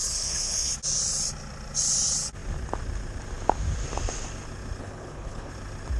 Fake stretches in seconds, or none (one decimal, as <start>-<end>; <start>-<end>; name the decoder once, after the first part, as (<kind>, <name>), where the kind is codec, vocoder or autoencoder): 0.0-0.7 (codec, HILCodec); 4.8-5.5